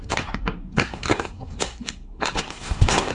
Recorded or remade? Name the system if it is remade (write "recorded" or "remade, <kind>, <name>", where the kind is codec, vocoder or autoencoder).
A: remade, codec, SNAC